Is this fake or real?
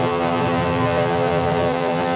fake